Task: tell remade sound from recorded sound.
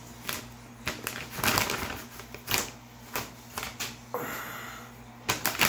recorded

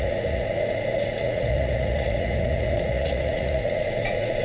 remade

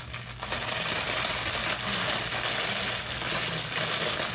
recorded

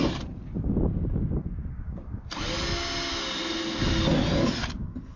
recorded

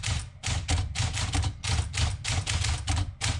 recorded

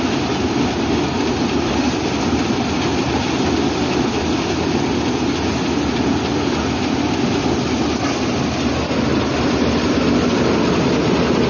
recorded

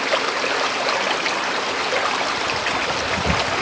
recorded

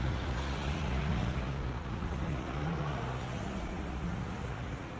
remade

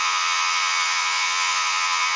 remade